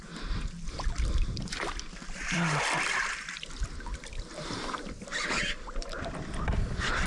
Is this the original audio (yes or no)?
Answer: no